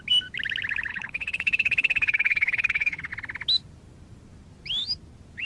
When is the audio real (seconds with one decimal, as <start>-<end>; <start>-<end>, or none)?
0.0-0.9; 3.1-5.4